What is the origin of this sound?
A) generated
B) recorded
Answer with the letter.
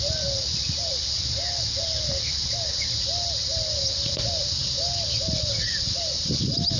B